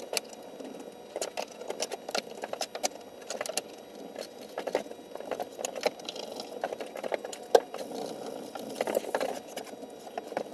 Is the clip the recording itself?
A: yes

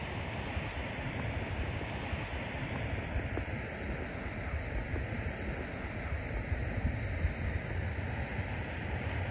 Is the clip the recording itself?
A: yes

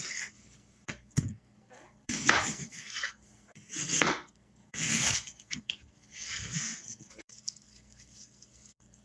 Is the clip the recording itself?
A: no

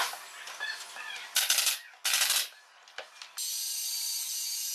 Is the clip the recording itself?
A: yes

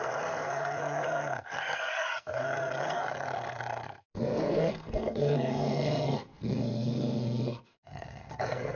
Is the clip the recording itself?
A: no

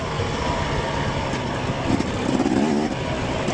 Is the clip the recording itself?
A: yes